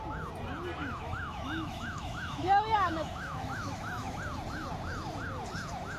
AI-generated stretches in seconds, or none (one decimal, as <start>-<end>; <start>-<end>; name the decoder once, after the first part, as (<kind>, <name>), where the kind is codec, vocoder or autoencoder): 0.8-4.2 (autoencoder, DAC-VAE)